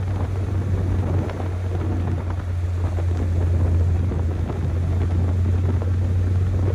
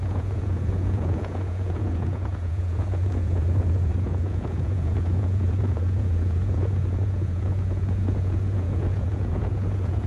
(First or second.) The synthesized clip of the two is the second